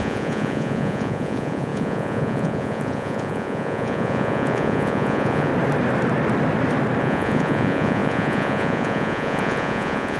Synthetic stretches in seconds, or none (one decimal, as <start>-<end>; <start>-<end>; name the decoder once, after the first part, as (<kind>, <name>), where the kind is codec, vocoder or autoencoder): 0.0-5.5 (vocoder, Vocos); 7.0-10.2